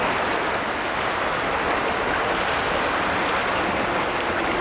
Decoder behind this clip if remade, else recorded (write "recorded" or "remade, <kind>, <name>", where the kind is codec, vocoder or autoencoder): recorded